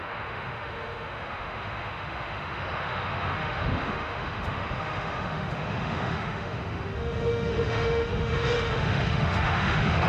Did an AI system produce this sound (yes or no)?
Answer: yes